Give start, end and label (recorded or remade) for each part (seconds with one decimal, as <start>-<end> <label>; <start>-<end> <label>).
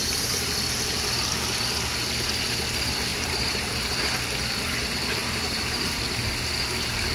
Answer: 0.0-0.5 remade; 0.5-3.1 recorded; 3.1-3.7 remade; 3.7-5.2 recorded; 5.2-6.0 remade; 6.0-7.1 recorded